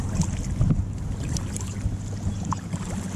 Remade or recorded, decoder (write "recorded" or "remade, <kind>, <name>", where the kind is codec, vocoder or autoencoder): recorded